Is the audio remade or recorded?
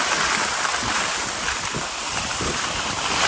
recorded